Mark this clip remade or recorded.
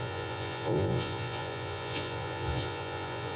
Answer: remade